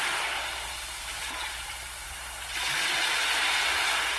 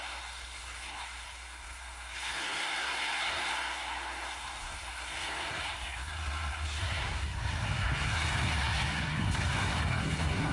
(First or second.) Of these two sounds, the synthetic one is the second